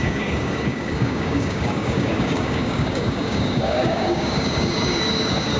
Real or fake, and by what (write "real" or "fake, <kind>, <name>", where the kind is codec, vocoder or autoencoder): fake, codec, DAC